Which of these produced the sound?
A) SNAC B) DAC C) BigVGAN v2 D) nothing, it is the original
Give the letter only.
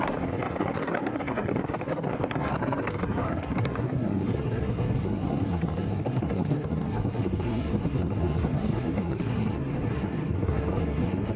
A